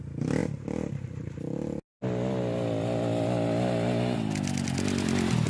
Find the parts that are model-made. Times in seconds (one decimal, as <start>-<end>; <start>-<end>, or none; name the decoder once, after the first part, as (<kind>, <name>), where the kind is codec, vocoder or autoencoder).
none